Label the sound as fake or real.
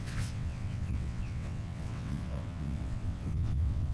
fake